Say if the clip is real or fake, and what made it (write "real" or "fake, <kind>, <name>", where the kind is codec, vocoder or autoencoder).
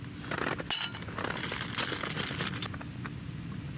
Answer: real